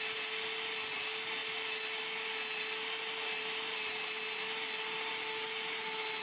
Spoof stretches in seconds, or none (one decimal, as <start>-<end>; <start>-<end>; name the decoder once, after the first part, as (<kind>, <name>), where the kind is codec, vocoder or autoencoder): none